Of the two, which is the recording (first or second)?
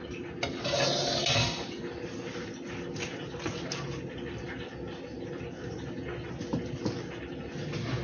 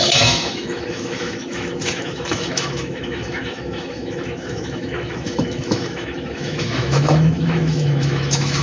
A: first